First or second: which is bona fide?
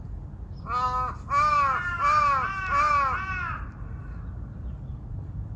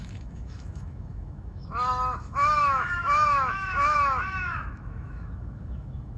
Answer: first